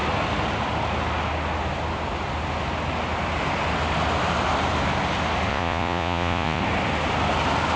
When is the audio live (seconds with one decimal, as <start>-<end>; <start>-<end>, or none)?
0.0-5.5; 6.6-7.8